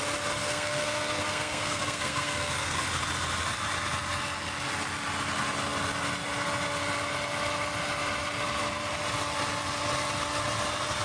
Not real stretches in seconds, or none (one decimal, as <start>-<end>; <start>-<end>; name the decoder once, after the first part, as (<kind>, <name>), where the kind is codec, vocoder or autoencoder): 0.4-2.8 (codec, SNAC)